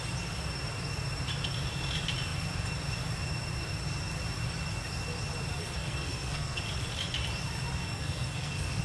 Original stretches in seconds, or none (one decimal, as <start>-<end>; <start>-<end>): 0.0-5.6; 6.6-7.8